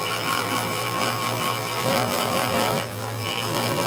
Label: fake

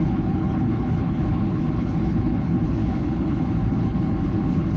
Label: fake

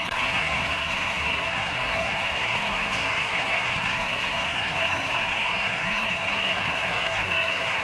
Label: fake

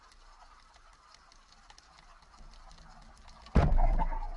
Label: real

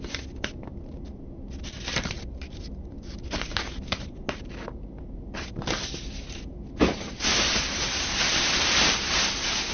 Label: fake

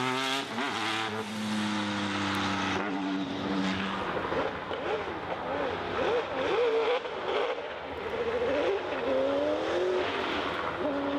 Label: real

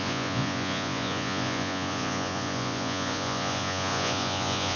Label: fake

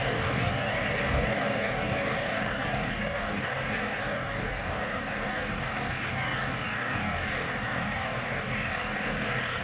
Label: fake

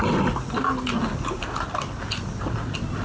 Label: real